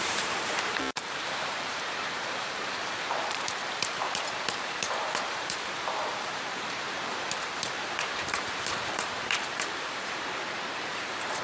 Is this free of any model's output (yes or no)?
no